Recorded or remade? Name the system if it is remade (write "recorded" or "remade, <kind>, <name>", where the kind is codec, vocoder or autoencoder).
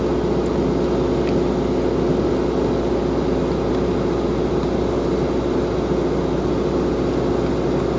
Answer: recorded